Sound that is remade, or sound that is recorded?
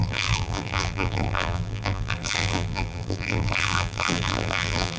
remade